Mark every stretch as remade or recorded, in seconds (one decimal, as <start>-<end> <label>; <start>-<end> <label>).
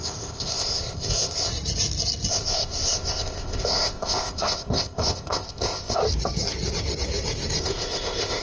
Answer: 0.0-1.5 remade; 1.5-2.3 recorded; 2.3-6.0 remade; 6.0-7.6 recorded; 7.6-8.4 remade